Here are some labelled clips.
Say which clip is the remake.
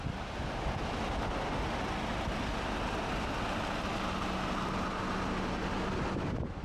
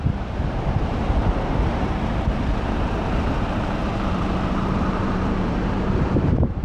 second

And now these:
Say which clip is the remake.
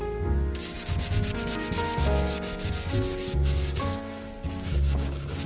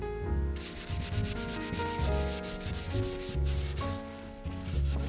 first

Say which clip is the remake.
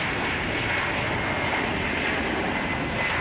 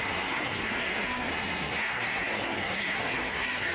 second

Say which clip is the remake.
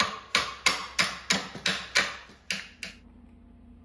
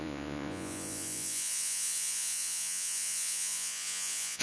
second